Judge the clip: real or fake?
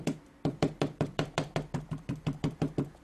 fake